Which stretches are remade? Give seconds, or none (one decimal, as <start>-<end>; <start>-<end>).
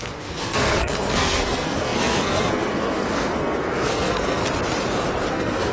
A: 0.0-4.4; 5.3-5.7